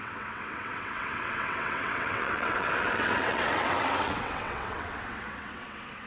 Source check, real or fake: fake